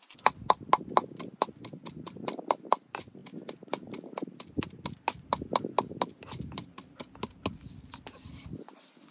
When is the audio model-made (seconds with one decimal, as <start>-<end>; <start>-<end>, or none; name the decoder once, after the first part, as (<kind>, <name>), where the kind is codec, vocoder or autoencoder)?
none